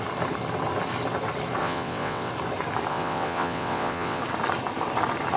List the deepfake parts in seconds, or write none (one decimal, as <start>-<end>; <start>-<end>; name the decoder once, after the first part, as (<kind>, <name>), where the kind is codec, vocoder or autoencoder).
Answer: 1.6-2.3 (vocoder, WaveNeXt); 2.9-4.2